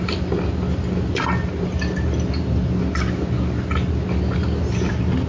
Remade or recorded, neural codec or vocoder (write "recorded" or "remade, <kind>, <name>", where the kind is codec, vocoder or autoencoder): recorded